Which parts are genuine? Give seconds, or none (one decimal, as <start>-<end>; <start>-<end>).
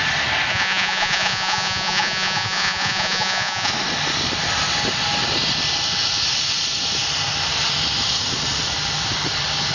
0.0-0.5; 3.7-9.7